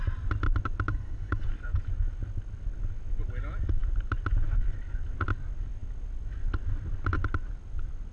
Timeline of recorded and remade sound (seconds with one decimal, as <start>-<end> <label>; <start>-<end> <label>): 0.0-0.9 recorded; 0.9-1.5 remade; 1.5-8.1 recorded